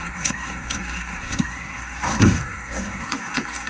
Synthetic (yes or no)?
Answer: yes